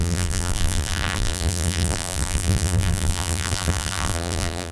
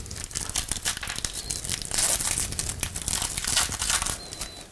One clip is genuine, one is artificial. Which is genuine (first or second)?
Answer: second